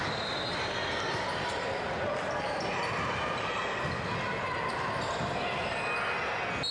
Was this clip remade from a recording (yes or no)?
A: no